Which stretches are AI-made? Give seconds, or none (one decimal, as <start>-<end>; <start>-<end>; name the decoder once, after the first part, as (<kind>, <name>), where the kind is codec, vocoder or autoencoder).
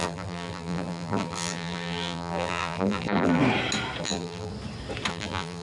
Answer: 0.0-3.4 (vocoder, BigVGAN v2); 4.0-4.5; 5.1-5.6